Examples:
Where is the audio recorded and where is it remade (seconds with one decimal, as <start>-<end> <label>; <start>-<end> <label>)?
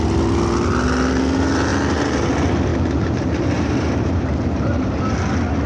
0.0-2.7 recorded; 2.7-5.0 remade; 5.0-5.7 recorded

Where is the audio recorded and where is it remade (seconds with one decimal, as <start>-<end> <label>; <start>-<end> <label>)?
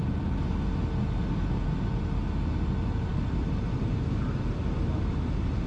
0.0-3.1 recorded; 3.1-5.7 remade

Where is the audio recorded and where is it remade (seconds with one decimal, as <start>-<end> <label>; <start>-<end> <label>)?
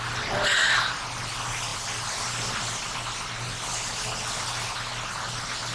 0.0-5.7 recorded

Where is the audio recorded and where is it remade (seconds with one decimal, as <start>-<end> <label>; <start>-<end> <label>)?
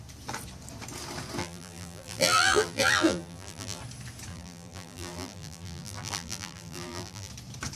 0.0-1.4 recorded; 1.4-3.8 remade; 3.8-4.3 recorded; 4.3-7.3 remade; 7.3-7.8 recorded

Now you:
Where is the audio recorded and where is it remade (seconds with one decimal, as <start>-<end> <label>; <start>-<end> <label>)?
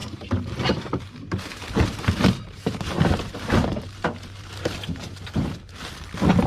0.0-0.7 remade; 0.7-1.6 recorded; 1.6-5.5 remade; 5.5-6.5 recorded